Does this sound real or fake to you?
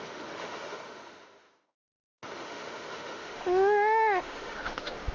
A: fake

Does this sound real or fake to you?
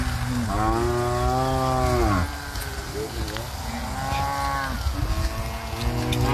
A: real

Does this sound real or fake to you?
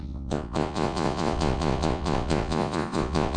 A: fake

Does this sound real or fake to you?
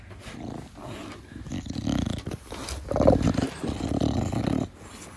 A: real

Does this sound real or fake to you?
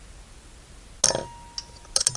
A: real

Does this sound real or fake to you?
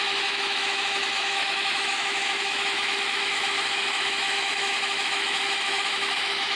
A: fake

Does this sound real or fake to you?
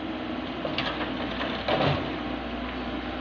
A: real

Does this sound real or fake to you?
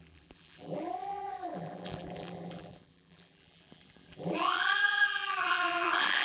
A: fake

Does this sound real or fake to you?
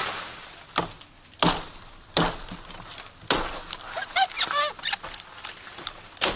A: real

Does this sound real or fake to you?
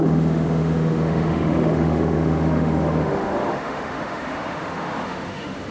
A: fake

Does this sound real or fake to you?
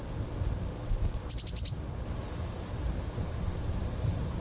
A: real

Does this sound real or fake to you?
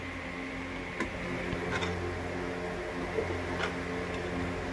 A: real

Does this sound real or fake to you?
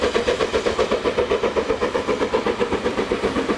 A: real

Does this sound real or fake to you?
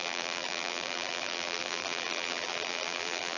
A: fake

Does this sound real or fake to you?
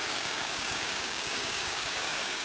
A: fake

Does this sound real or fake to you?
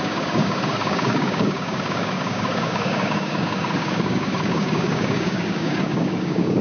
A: fake